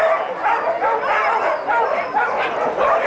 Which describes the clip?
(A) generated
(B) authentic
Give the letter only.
B